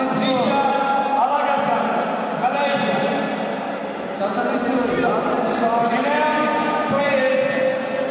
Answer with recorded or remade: recorded